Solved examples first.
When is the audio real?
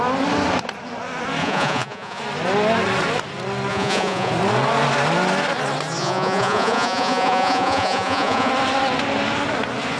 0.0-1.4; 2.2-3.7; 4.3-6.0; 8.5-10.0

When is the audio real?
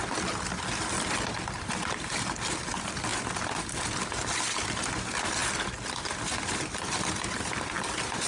0.0-8.3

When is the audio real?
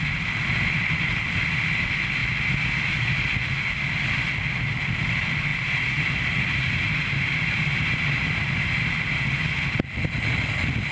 0.0-5.5; 8.8-10.9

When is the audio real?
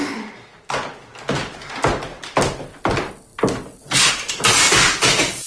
0.0-5.5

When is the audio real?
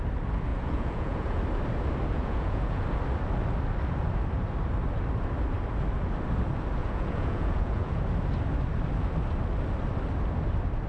0.0-0.5; 1.4-2.1; 2.8-6.8; 8.0-10.9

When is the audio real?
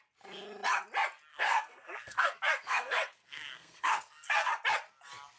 0.0-1.3; 4.5-5.4